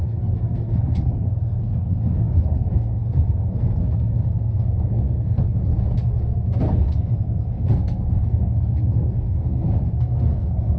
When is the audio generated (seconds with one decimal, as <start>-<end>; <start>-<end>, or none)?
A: 0.0-5.7; 6.7-10.8